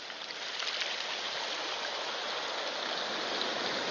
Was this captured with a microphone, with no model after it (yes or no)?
yes